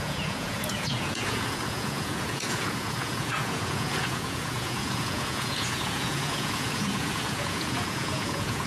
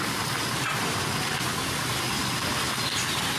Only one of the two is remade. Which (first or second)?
first